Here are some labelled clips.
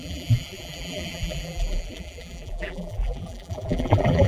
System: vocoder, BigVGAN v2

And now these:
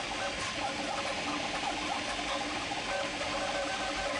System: none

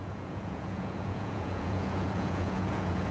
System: vocoder, Vocos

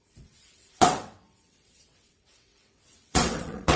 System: vocoder, WaveNeXt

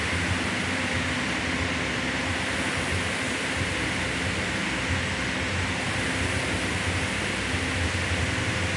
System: none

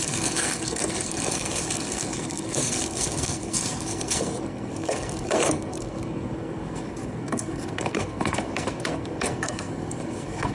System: codec, SNAC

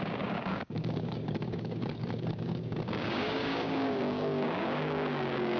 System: codec, DAC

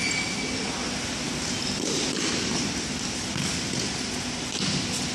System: none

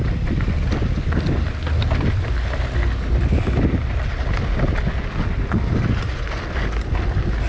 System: none